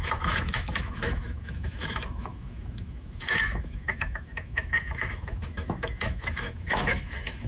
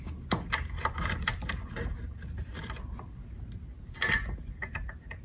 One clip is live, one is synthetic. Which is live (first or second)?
second